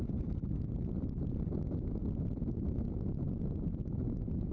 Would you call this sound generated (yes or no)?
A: no